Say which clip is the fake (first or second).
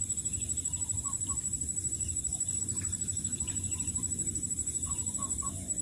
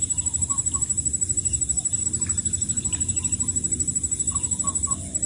first